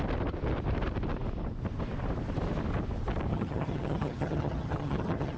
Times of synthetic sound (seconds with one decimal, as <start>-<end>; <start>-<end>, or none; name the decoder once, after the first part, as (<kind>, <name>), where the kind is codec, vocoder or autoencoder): 3.3-5.4 (vocoder, HiFi-GAN)